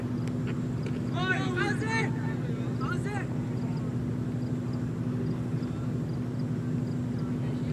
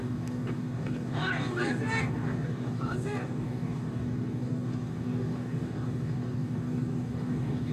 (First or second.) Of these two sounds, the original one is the first